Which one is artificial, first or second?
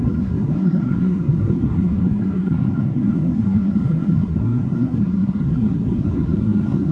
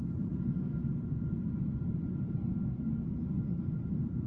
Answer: first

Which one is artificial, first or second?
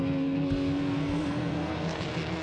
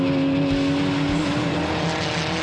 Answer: first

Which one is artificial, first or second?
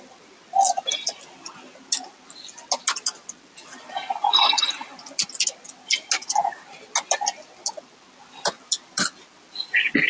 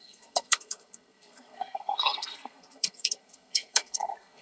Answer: second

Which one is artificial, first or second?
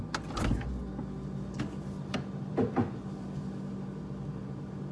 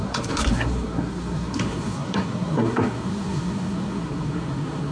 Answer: second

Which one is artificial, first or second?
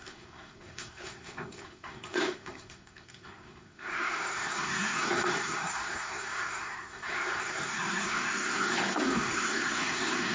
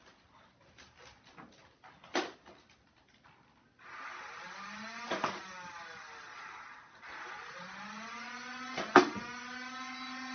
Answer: first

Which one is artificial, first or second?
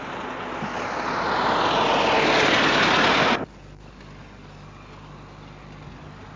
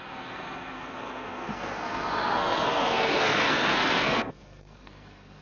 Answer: second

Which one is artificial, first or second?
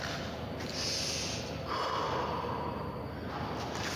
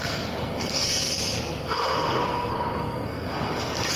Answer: second